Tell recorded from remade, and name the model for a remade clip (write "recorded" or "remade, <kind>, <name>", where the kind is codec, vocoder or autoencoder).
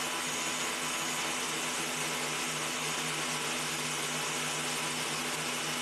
recorded